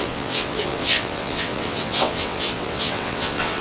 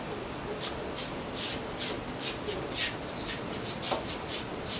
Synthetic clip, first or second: first